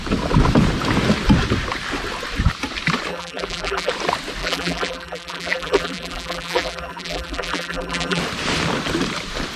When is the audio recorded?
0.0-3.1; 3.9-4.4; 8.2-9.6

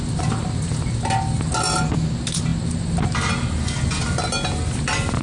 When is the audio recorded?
0.0-5.2